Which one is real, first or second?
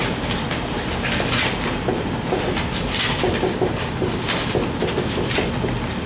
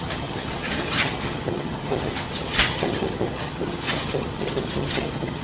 first